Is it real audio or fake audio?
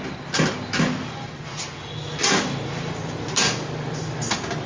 real